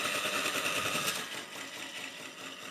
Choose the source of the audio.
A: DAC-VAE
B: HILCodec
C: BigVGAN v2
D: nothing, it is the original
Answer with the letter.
D